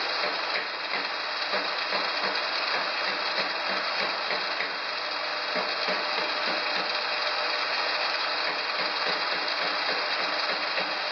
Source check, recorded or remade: recorded